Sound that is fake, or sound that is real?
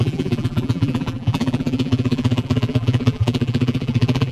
fake